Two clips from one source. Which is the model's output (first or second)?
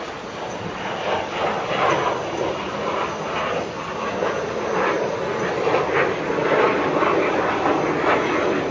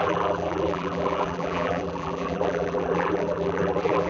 second